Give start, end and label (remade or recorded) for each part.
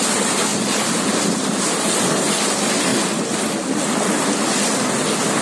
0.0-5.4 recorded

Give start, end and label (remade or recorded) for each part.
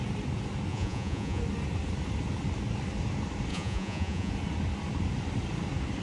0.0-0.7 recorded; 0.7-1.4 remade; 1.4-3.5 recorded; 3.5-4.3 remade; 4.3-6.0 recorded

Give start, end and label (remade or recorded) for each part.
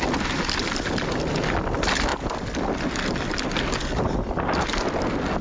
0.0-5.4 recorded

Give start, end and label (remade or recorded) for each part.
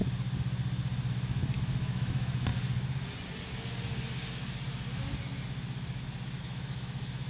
0.0-1.1 recorded; 1.1-2.5 remade; 2.5-6.4 recorded; 6.4-7.3 remade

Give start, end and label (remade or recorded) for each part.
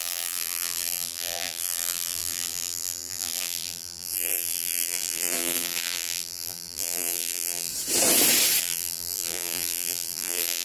0.0-7.7 remade; 7.7-8.6 recorded; 8.6-10.6 remade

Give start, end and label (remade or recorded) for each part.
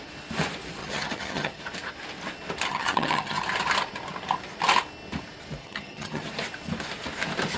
0.0-0.8 recorded; 0.8-1.6 remade; 1.6-2.7 recorded; 2.7-3.4 remade; 3.4-5.6 recorded; 5.6-6.3 remade; 6.3-7.6 recorded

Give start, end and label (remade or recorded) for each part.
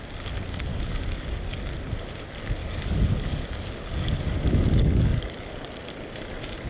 0.0-0.7 recorded; 0.7-1.6 remade; 1.6-2.6 recorded; 2.6-5.5 remade; 5.5-6.7 recorded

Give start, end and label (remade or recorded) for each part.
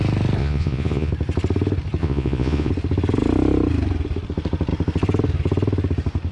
0.0-0.4 recorded; 0.4-1.1 remade; 1.1-2.0 recorded; 2.0-2.7 remade; 2.7-6.3 recorded